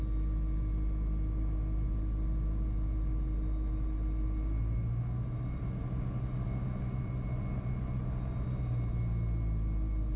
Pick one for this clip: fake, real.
real